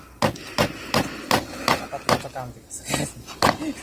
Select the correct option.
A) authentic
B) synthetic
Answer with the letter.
A